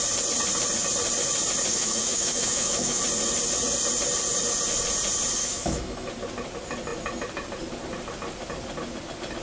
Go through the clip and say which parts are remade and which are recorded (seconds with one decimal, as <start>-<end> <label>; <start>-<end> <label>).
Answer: 0.0-1.7 recorded; 1.7-3.0 remade; 3.0-5.4 recorded; 5.4-6.1 remade; 6.1-9.4 recorded